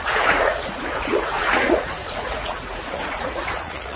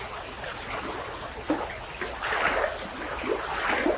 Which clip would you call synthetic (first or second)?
first